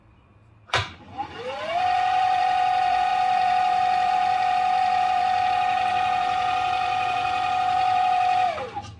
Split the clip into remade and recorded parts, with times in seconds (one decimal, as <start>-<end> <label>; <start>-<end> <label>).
0.0-0.4 remade; 0.4-1.0 recorded; 1.0-9.0 remade